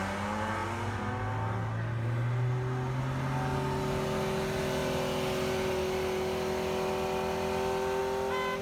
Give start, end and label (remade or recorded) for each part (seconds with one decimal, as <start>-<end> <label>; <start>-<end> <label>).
0.0-8.6 recorded